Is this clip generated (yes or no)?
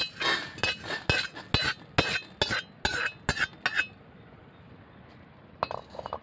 no